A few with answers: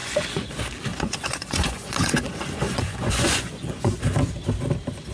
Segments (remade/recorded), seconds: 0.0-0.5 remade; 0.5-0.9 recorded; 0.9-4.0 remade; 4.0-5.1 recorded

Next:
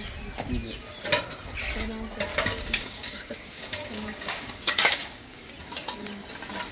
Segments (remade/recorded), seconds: 0.0-2.3 recorded; 2.3-5.5 remade; 5.5-6.7 recorded

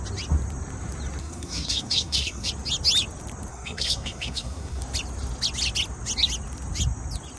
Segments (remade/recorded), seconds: 0.0-1.2 recorded; 1.2-2.5 remade; 2.5-3.5 recorded; 3.5-4.8 remade; 4.8-7.4 recorded

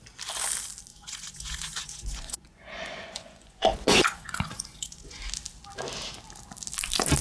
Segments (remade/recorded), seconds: 0.0-0.9 recorded; 0.9-5.2 remade; 5.2-7.2 recorded

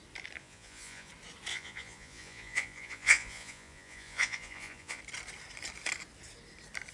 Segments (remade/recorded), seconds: 0.0-0.4 recorded; 0.4-1.1 remade; 1.1-1.5 recorded; 1.5-5.0 remade; 5.0-6.9 recorded

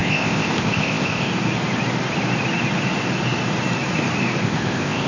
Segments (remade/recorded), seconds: 0.0-1.3 remade; 1.3-4.4 recorded; 4.4-5.1 remade

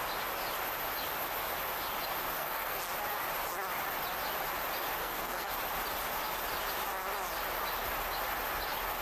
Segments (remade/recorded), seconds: 0.0-2.3 recorded; 2.3-2.8 remade; 2.8-5.0 recorded; 5.0-5.5 remade; 5.5-9.0 recorded